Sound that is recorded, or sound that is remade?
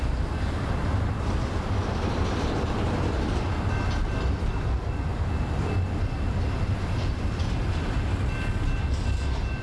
recorded